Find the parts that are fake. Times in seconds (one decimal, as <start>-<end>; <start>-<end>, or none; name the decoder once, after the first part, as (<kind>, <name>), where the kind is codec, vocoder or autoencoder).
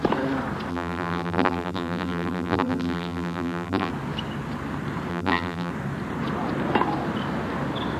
0.7-3.9 (vocoder, BigVGAN v2); 5.1-5.7